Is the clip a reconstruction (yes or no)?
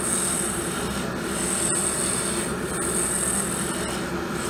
no